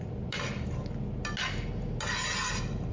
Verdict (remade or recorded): recorded